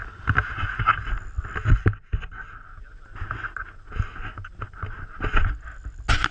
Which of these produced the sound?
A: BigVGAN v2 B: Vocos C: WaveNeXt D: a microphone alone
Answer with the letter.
D